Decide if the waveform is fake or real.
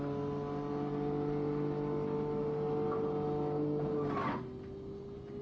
real